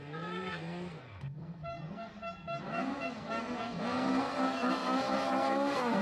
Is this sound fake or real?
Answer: fake